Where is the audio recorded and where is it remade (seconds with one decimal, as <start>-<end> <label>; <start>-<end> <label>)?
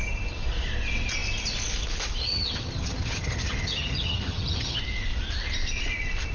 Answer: 0.0-2.2 recorded; 2.2-4.8 remade; 4.8-6.3 recorded